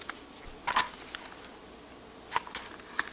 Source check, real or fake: real